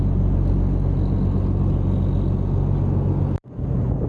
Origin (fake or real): real